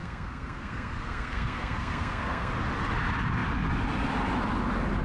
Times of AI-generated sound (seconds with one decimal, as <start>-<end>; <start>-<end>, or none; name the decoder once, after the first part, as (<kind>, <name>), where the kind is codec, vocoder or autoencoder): 0.0-2.5 (codec, SNAC)